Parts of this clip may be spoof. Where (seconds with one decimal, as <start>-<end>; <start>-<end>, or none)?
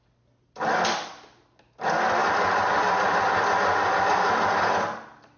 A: none